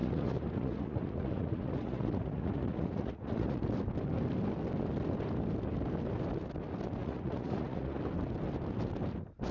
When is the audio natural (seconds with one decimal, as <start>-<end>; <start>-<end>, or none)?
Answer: 3.6-7.0; 8.0-9.5